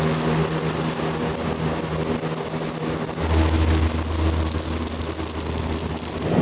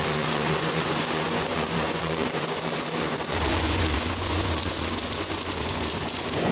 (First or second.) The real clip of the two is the first